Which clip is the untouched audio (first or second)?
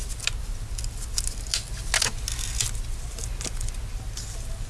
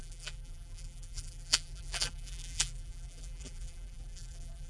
first